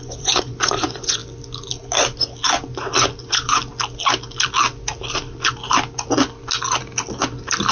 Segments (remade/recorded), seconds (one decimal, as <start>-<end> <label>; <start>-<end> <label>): 0.0-1.2 remade; 1.2-3.2 recorded; 3.2-3.6 remade; 3.6-7.7 recorded